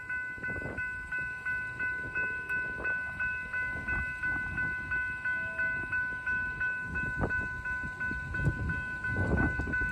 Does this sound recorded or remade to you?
recorded